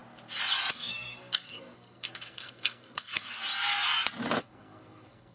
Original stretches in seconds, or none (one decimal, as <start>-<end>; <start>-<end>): 0.0-0.7; 3.5-4.4